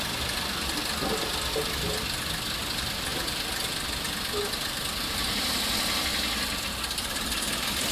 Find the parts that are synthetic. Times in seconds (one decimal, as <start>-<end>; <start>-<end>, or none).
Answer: none